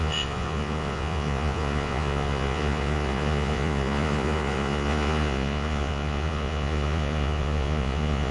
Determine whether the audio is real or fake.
fake